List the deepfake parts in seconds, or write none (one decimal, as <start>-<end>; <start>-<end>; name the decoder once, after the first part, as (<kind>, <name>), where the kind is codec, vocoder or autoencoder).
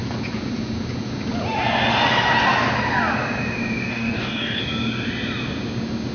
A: 3.9-4.6 (codec, DAC)